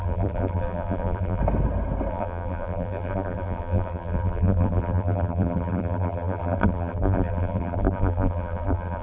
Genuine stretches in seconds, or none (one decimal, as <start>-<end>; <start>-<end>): 1.4-2.1